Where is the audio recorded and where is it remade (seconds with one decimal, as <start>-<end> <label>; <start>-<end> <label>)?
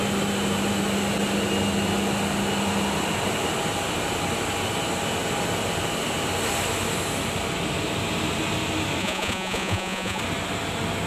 0.0-9.0 recorded; 9.0-10.2 remade; 10.2-11.1 recorded